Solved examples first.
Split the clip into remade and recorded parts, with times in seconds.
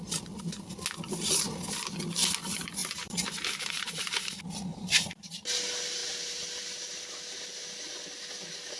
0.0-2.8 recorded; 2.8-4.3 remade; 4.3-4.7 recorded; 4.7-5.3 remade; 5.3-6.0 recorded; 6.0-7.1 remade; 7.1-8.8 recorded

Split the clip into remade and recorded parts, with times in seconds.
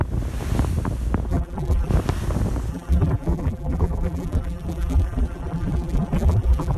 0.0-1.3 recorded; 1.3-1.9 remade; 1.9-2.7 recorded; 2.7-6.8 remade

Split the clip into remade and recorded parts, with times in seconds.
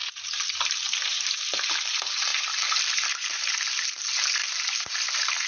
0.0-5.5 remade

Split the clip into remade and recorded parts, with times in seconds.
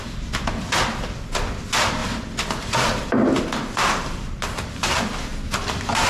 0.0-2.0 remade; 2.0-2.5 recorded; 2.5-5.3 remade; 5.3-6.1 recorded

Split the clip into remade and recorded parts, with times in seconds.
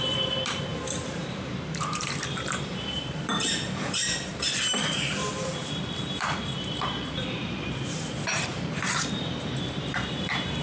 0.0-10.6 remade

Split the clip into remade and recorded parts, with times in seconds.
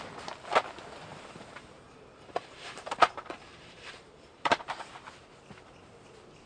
0.0-1.1 recorded; 1.1-4.9 remade; 4.9-6.5 recorded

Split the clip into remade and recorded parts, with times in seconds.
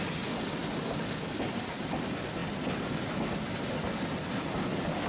0.0-5.1 recorded